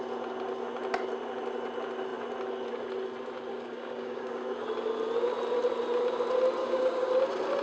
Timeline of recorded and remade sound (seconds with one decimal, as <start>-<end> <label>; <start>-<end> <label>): 0.0-3.5 recorded; 3.5-4.4 remade; 4.4-6.6 recorded; 6.6-7.1 remade; 7.1-7.6 recorded